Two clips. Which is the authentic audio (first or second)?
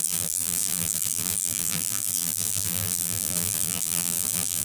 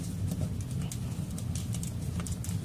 second